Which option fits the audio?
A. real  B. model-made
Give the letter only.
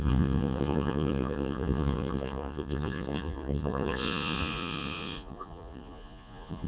B